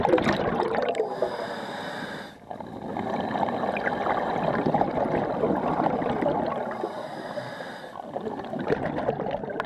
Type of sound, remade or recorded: recorded